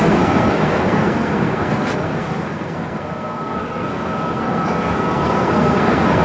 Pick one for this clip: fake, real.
fake